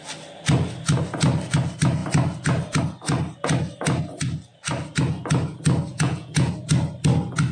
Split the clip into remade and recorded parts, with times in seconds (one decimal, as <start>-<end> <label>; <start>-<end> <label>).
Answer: 0.0-5.9 recorded; 5.9-6.5 remade; 6.5-7.5 recorded